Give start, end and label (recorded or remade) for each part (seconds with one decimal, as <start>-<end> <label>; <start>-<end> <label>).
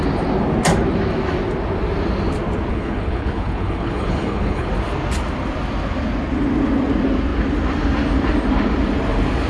0.0-2.7 recorded; 2.7-4.7 remade; 4.7-9.5 recorded